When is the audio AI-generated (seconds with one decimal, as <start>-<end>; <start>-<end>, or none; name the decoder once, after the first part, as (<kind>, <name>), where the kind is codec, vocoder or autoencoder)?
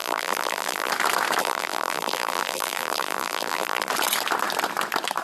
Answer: 0.0-0.9 (vocoder, BigVGAN v2); 1.4-3.9